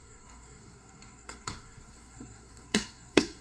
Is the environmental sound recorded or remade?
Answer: remade